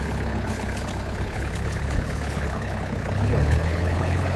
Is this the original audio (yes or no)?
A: no